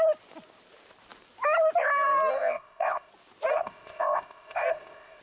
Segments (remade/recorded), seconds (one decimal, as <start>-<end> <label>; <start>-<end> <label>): 0.0-2.3 recorded; 2.3-3.1 remade; 3.1-3.5 recorded; 3.5-5.2 remade

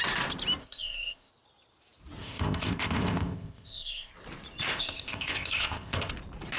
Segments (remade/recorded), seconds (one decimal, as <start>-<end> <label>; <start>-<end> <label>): 0.0-0.6 recorded; 0.6-1.3 remade; 1.3-2.2 recorded; 2.2-4.1 remade; 4.1-4.7 recorded; 4.7-6.1 remade; 6.1-6.6 recorded

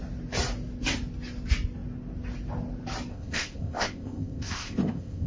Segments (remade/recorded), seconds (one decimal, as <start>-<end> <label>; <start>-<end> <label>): 0.0-3.1 recorded; 3.1-5.3 remade